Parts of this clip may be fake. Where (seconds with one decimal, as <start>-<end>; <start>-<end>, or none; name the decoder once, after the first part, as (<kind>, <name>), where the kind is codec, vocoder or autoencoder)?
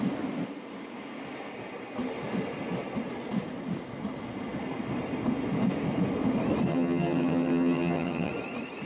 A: 6.7-8.3 (vocoder, HiFi-GAN)